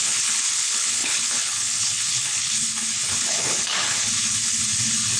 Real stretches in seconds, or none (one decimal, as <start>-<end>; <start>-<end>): none